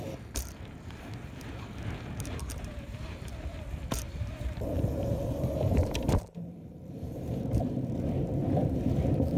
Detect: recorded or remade remade